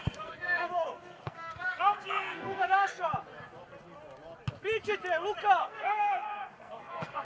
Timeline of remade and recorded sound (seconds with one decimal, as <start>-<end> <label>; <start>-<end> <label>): 0.0-3.1 remade; 3.1-5.6 recorded; 5.6-7.2 remade